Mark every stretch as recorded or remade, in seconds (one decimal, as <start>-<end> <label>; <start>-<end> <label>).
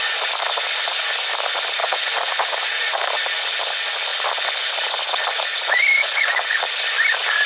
0.0-1.8 recorded; 1.8-3.0 remade; 3.0-6.0 recorded; 6.0-6.6 remade; 6.6-7.5 recorded